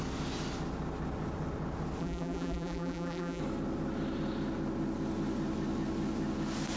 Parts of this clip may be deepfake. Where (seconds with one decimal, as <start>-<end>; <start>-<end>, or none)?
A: 2.0-3.4